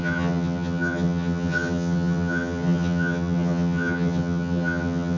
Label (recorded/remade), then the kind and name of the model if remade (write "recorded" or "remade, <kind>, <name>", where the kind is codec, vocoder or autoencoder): remade, vocoder, HiFi-GAN